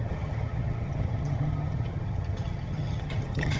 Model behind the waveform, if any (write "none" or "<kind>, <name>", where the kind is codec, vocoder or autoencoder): vocoder, HiFi-GAN